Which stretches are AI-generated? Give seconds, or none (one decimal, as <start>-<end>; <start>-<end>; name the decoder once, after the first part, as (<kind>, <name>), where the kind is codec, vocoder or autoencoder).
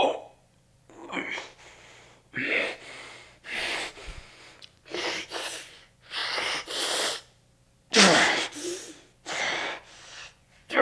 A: 0.0-1.0 (vocoder, Vocos); 3.6-6.2; 9.6-10.8